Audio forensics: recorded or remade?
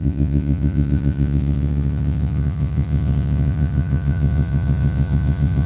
remade